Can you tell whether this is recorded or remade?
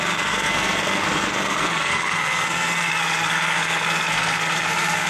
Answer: remade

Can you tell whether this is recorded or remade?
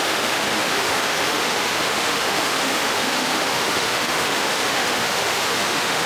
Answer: remade